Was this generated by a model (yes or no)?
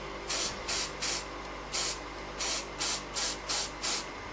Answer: no